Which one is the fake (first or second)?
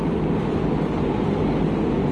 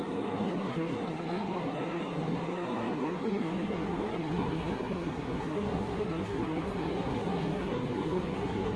second